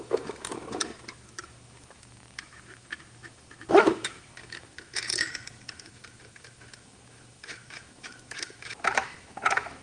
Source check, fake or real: fake